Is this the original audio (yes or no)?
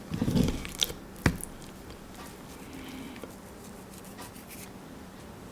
yes